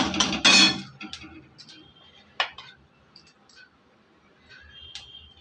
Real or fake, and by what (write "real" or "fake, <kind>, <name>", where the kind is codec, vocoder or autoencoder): real